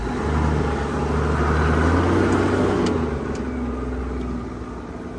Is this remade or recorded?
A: recorded